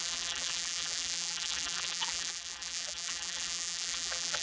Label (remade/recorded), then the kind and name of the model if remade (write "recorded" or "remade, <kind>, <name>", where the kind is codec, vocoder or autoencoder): remade, vocoder, BigVGAN v2